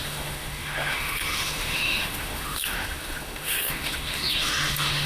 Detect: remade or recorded remade